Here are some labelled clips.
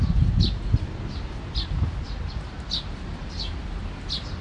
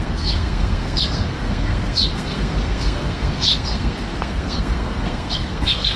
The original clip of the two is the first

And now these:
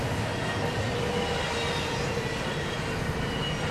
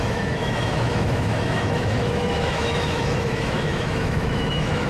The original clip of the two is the first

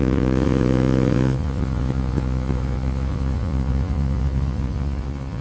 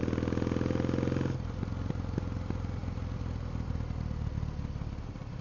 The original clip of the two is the second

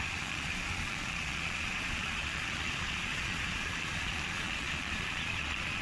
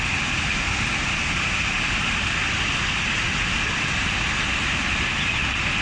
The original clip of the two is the second